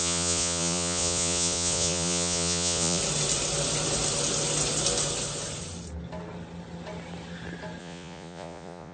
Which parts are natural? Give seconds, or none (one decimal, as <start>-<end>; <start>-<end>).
3.0-7.8